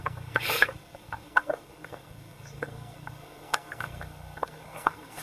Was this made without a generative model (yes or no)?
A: no